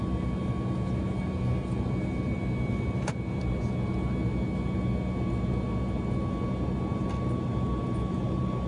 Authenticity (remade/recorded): recorded